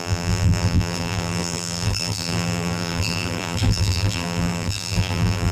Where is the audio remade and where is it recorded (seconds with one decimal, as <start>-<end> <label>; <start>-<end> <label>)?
0.0-5.5 remade